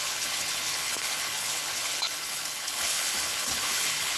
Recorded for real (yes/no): no